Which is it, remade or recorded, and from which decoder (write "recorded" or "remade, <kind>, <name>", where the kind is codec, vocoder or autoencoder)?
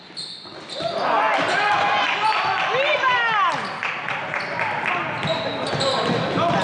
recorded